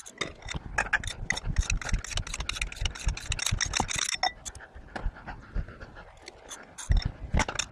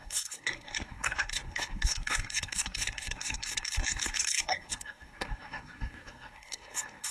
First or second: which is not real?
second